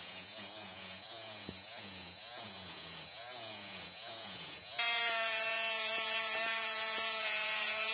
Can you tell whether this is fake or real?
fake